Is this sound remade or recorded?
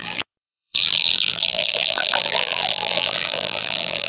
remade